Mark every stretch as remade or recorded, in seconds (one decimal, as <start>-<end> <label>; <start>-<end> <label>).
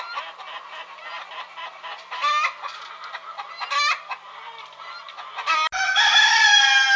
0.0-7.0 recorded